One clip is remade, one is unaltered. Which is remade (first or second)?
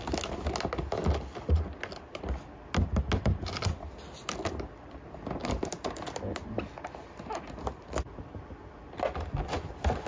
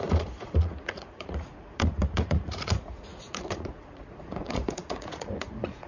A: second